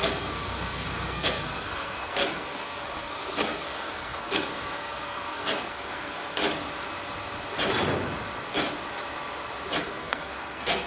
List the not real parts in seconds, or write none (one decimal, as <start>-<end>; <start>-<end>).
0.0-6.4; 9.8-10.9